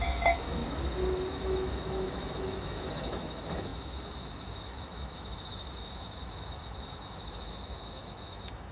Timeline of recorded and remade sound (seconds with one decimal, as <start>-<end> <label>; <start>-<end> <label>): 0.0-0.6 remade; 0.6-1.3 recorded; 1.3-8.7 remade